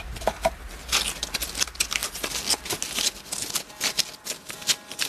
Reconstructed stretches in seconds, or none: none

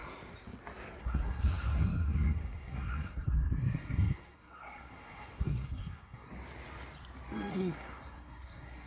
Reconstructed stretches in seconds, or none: 1.0-6.3 (codec, SNAC); 7.5-8.9

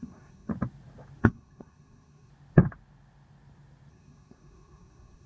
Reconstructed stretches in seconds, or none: 0.0-0.5 (codec, SNAC); 1.2-2.3; 3.9-5.3

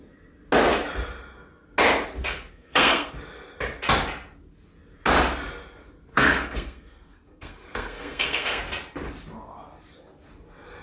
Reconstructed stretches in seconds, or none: 2.2-3.1 (codec, SNAC); 6.1-8.6

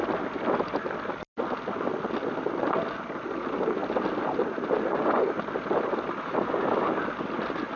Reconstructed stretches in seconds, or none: none

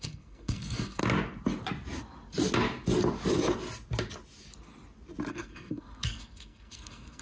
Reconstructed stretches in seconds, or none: 0.0-1.0 (codec, SNAC); 5.3-7.2

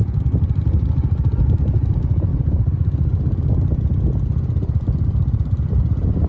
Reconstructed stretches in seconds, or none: none